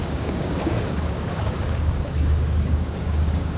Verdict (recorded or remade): remade